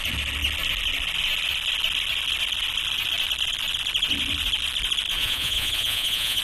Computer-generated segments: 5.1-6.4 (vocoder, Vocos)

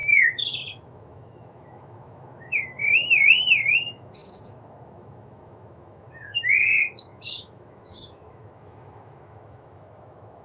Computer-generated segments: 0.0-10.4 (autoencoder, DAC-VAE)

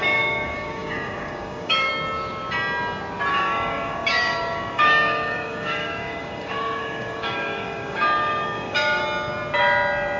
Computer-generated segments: 0.0-1.9 (codec, DAC); 3.3-9.0